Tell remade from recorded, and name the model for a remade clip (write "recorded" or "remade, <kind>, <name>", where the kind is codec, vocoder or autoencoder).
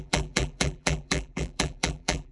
remade, vocoder, BigVGAN v2